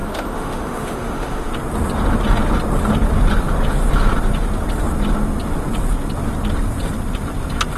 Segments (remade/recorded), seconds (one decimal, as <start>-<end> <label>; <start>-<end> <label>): 0.0-1.5 remade; 1.5-7.8 recorded